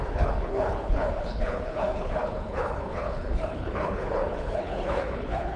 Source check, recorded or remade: remade